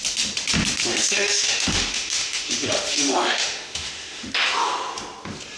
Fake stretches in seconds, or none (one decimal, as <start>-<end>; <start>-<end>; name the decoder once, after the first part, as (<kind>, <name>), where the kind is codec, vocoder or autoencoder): 0.9-4.3 (autoencoder, DAC-VAE)